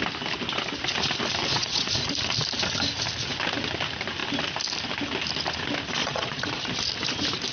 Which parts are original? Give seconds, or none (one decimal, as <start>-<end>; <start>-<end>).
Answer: 0.0-1.4; 1.9-6.0; 6.6-7.5